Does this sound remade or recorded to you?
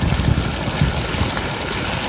recorded